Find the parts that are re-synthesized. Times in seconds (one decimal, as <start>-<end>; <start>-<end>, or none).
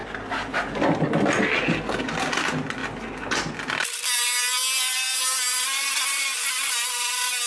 none